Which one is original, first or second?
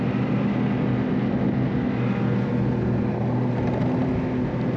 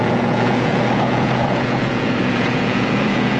first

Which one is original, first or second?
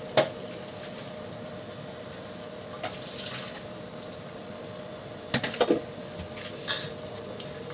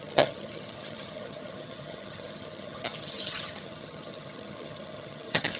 first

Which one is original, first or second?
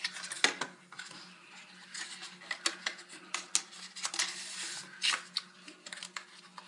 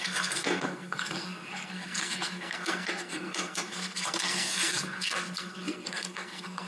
first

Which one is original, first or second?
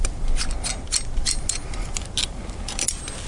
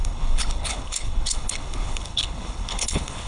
first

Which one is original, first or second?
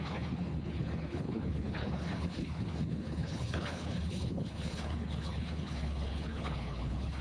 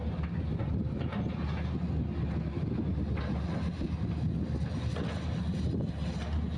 second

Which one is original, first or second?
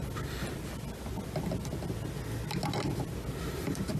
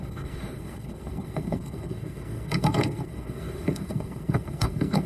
first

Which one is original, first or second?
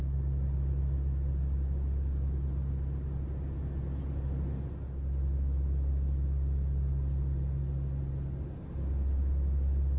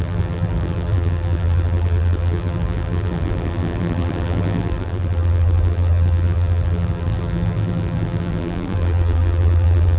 first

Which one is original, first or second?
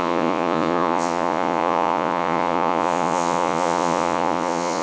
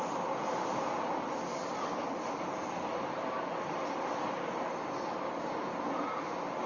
second